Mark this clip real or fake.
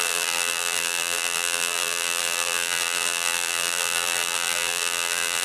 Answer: fake